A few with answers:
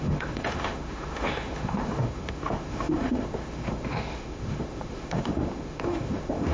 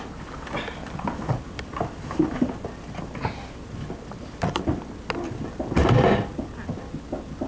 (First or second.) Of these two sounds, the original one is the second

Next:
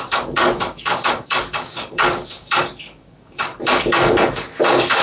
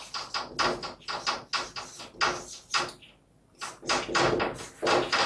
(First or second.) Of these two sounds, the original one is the second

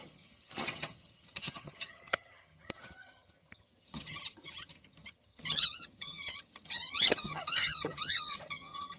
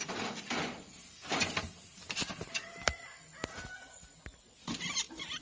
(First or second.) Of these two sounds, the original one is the second